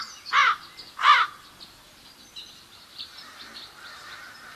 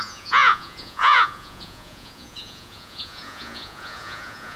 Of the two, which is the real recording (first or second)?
first